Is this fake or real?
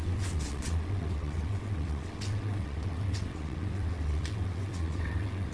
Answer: fake